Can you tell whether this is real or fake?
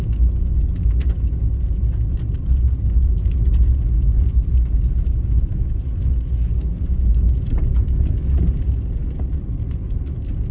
real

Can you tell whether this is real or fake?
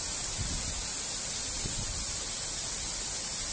real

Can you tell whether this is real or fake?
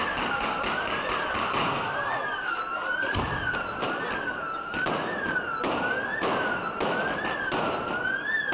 real